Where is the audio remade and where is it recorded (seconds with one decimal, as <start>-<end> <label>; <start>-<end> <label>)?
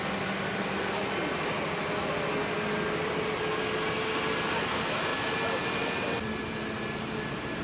0.0-7.6 recorded